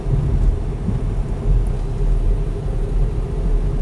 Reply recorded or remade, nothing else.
recorded